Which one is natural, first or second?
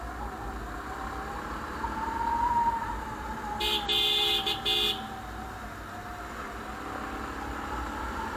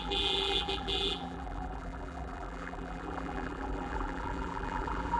first